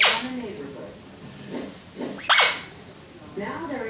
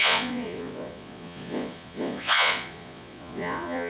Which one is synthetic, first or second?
second